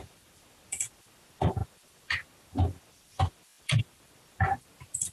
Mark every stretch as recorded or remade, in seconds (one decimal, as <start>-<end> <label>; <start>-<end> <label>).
0.0-5.1 remade